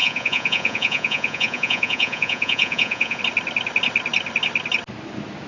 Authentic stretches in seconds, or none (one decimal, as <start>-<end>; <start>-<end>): 3.2-5.5